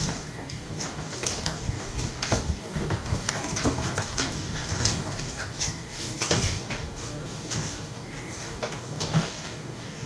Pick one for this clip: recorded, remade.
remade